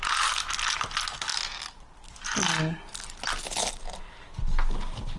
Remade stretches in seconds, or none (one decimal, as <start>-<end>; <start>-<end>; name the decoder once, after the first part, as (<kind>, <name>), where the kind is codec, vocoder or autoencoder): 1.3-2.1 (vocoder, BigVGAN v2)